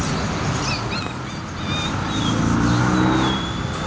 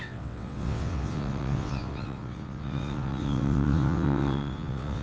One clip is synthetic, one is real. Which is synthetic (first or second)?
second